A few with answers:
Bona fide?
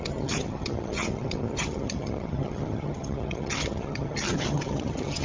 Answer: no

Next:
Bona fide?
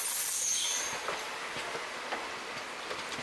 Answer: yes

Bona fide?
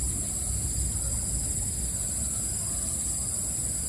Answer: yes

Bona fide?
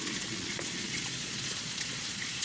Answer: no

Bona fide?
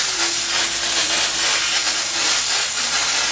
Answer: yes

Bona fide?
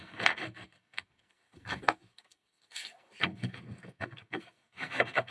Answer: no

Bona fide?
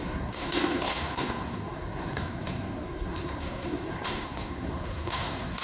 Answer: no